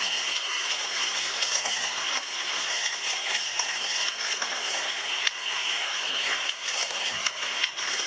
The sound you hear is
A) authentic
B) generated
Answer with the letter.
B